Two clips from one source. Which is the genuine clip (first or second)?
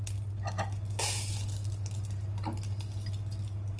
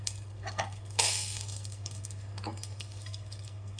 first